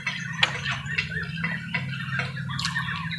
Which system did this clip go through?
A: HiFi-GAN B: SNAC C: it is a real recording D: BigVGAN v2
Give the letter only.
C